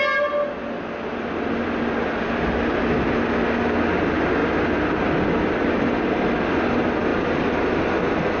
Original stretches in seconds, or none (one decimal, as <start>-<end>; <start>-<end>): 0.0-8.4